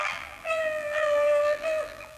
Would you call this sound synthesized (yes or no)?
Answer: yes